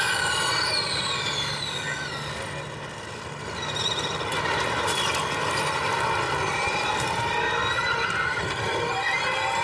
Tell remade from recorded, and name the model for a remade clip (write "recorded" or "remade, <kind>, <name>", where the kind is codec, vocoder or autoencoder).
recorded